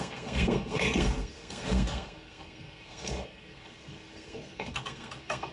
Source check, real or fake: fake